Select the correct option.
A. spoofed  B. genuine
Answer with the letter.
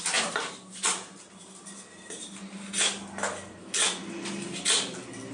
B